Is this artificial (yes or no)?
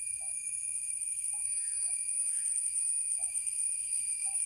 yes